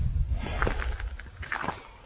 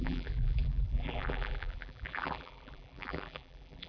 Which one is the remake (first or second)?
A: second